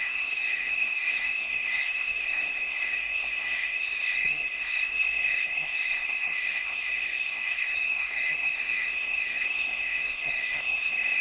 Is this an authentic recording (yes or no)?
no